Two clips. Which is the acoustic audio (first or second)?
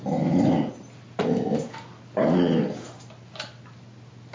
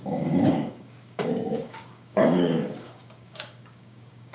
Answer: first